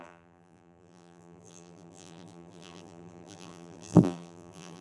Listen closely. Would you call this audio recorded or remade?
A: remade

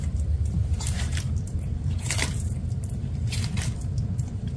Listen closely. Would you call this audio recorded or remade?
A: remade